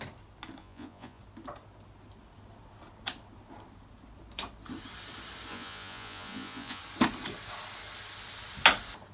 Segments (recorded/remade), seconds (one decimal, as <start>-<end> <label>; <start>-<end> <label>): 0.0-0.6 recorded; 0.6-1.2 remade; 1.2-5.5 recorded; 5.5-6.8 remade; 6.8-9.1 recorded